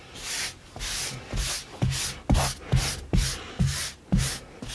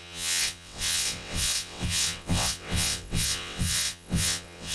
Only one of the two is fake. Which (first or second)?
second